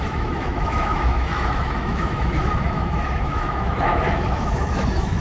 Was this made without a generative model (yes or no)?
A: no